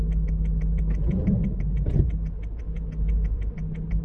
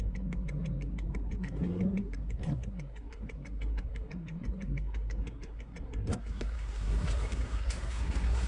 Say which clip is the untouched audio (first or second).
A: first